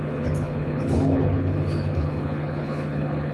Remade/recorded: remade